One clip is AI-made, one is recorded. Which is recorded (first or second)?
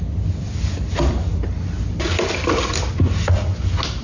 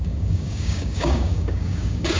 first